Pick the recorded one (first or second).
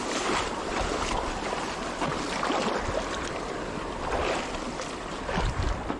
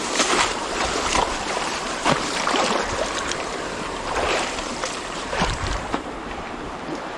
first